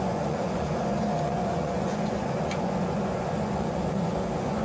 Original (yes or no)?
no